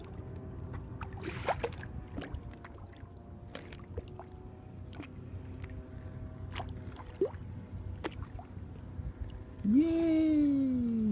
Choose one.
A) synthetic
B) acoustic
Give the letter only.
B